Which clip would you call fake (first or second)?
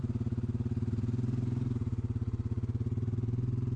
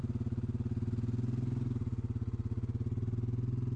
first